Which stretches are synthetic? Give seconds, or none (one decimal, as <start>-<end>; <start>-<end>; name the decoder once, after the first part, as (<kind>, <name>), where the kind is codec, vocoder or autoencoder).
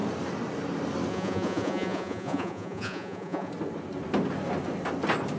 1.1-3.5 (vocoder, Vocos)